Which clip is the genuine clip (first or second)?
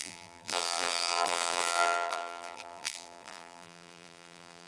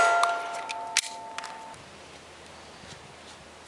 second